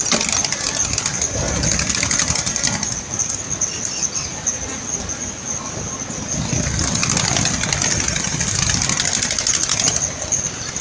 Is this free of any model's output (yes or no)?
yes